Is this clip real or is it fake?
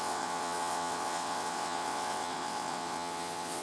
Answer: fake